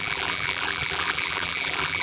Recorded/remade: remade